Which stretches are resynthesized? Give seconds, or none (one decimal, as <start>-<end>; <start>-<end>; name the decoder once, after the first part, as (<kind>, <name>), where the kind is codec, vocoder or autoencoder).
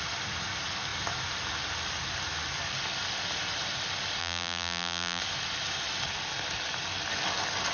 4.2-5.2 (vocoder, BigVGAN v2)